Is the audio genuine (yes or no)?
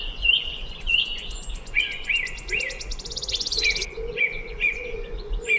no